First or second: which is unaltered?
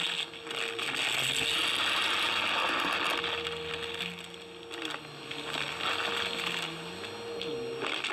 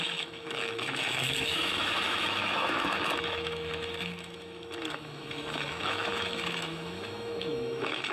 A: first